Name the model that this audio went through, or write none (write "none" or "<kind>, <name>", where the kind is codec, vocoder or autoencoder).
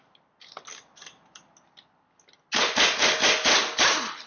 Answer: none